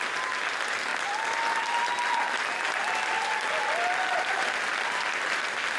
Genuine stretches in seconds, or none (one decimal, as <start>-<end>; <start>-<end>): 0.0-5.8